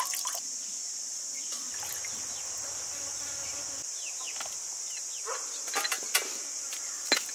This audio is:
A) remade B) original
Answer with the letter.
B